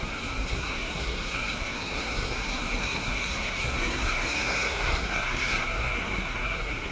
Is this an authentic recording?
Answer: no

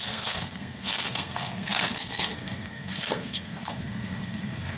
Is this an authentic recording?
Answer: no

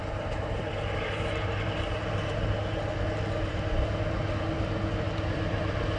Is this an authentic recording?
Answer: yes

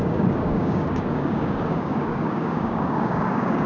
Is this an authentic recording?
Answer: no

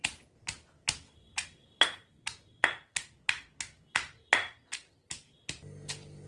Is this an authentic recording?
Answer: yes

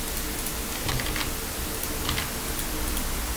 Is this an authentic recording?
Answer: yes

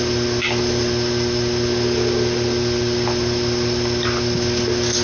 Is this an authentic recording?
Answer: yes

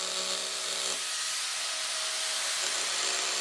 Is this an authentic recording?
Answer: yes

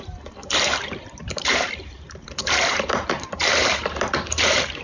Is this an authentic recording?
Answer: no